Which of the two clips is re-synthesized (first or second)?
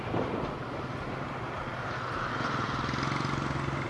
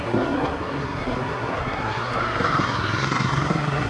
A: second